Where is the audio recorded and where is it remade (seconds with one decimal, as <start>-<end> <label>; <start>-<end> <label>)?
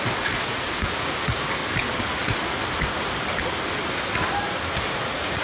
0.0-1.6 remade; 1.6-4.7 recorded; 4.7-5.4 remade